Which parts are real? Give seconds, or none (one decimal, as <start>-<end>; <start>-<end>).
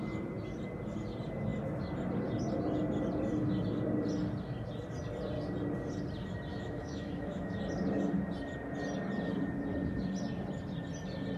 0.0-6.5; 7.6-11.4